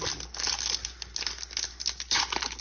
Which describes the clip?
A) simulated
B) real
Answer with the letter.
B